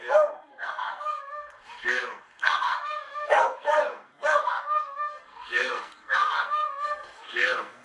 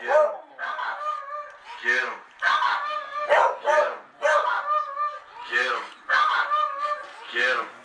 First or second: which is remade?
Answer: first